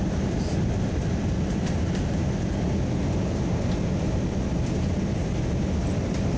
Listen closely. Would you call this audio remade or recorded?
recorded